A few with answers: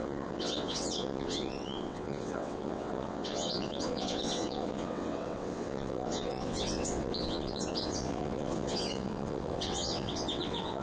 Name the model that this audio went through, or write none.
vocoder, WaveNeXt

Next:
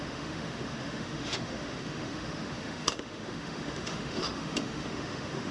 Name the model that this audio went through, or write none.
autoencoder, DAC-VAE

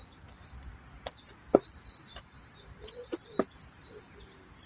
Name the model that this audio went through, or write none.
none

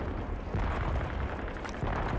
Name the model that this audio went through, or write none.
none